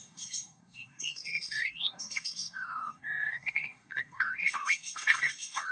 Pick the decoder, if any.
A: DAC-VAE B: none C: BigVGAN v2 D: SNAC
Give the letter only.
D